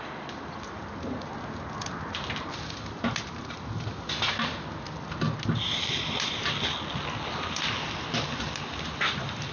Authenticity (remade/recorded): recorded